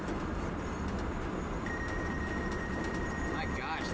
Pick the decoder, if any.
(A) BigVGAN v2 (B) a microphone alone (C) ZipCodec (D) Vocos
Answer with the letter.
B